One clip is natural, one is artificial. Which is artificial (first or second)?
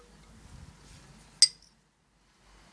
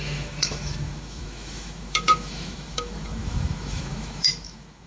second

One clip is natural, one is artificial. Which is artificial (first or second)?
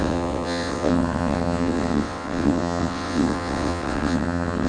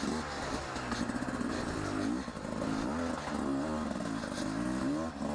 first